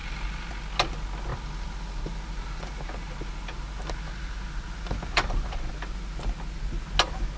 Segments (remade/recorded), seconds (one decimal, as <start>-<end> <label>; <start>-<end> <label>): 0.0-0.5 remade; 0.5-1.3 recorded; 1.3-5.7 remade; 5.7-7.4 recorded